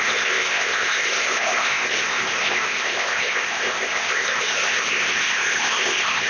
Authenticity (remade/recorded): remade